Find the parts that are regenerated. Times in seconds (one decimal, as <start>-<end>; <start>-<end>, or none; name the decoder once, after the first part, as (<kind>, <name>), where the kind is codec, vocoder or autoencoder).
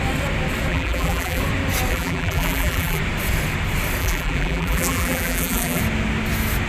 0.7-1.4 (vocoder, BigVGAN v2); 1.9-3.0; 4.0-5.8